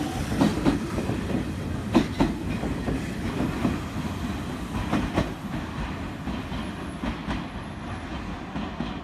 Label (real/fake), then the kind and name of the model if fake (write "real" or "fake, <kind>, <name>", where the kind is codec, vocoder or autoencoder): real